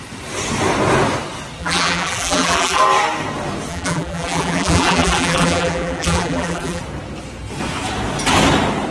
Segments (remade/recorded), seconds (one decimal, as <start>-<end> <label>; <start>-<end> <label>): 0.0-1.6 recorded; 1.6-2.8 remade; 2.8-3.7 recorded; 3.7-6.8 remade; 6.8-8.9 recorded